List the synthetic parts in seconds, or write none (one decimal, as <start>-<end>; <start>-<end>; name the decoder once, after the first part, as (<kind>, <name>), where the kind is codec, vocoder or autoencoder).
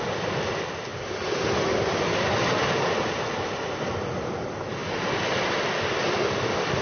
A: none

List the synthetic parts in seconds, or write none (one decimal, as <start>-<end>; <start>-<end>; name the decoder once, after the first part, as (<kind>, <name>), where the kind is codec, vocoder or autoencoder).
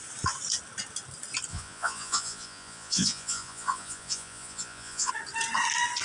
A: 1.5-5.1 (vocoder, Vocos)